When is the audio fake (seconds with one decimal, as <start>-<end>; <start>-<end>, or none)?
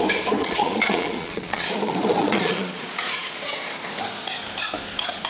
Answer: 0.4-3.6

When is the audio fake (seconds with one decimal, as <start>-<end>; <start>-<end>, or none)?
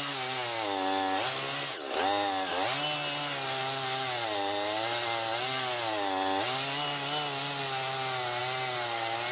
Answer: none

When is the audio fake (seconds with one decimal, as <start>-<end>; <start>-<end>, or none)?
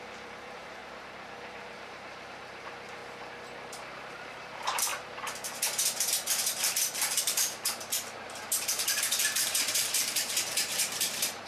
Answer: 0.0-0.8; 1.5-3.0; 4.1-4.9; 7.2-11.5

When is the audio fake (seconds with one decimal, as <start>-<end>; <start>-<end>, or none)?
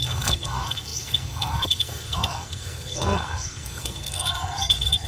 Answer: 0.0-5.1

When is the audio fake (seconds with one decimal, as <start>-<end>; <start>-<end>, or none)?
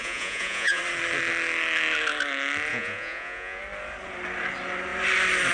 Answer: 0.0-0.8; 2.7-3.6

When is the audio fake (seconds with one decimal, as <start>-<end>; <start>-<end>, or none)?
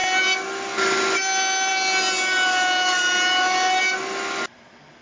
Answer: none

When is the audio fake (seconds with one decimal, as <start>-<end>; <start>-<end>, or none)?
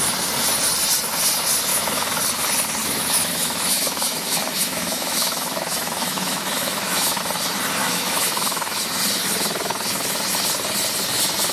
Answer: 1.7-2.2; 2.8-7.2; 7.8-8.8